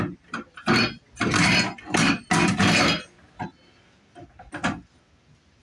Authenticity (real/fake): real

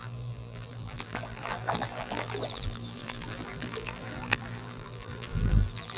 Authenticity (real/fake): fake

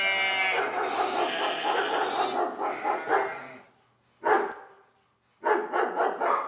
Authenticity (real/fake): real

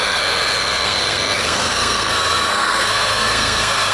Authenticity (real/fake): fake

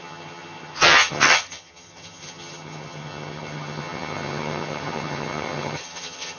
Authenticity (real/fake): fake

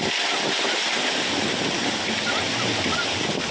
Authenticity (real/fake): real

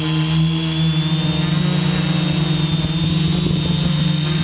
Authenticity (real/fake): real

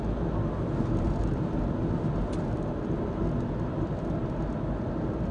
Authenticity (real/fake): real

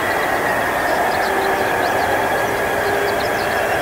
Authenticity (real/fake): real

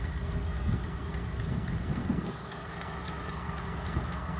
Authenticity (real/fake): fake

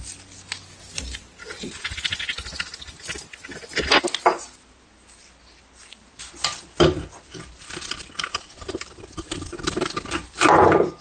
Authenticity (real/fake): real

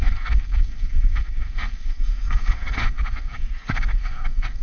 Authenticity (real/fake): fake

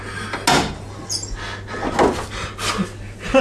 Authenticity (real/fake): real